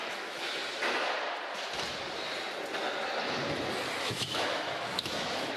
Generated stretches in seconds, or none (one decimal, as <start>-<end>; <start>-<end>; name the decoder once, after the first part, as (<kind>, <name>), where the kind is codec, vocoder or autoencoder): 0.0-0.6 (autoencoder, DAC-VAE); 4.0-5.6